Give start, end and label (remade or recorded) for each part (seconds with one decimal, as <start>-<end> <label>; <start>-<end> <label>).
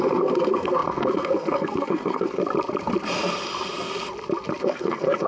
0.0-2.4 remade; 2.4-4.6 recorded; 4.6-5.3 remade